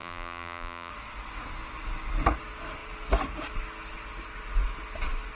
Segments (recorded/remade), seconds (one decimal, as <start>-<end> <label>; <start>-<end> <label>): 0.0-0.9 remade; 0.9-5.3 recorded